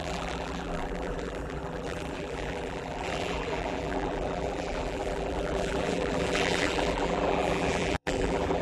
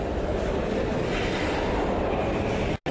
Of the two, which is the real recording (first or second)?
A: second